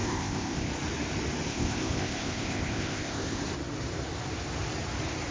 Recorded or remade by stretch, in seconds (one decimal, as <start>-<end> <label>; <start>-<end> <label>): 0.0-0.7 remade; 0.7-1.5 recorded; 1.5-3.4 remade; 3.4-5.3 recorded